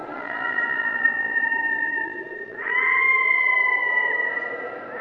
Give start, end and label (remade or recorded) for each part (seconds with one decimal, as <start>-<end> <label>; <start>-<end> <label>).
0.0-3.0 remade; 3.0-5.0 recorded